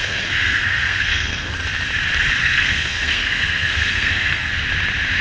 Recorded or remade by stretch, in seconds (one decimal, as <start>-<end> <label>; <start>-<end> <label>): 0.0-1.5 remade; 1.5-2.4 recorded; 2.4-4.6 remade; 4.6-5.2 recorded